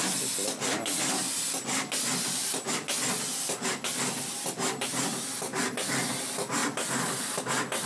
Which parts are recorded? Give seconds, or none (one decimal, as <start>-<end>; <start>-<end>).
0.0-6.6; 7.4-7.9